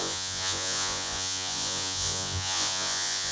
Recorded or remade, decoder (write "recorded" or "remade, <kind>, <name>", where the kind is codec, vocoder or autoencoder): remade, vocoder, Vocos